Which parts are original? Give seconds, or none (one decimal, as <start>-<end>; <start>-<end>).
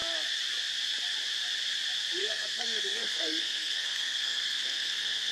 0.0-2.2